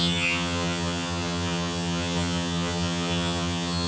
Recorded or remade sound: remade